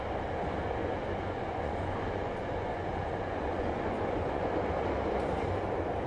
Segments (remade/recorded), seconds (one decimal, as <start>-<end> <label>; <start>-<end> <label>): 0.0-0.8 recorded; 0.8-4.5 remade; 4.5-6.1 recorded